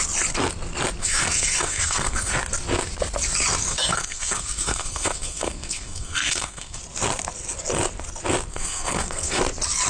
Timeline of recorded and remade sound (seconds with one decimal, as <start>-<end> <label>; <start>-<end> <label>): 0.0-1.0 recorded; 1.0-2.3 remade; 2.3-3.7 recorded; 3.7-6.8 remade; 6.8-8.5 recorded; 8.5-9.4 remade; 9.4-9.9 recorded